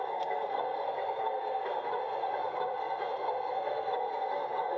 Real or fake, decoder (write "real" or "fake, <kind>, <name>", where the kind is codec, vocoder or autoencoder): fake, codec, SNAC